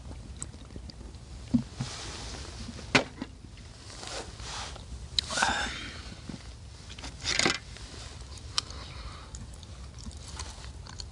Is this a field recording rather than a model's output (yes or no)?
yes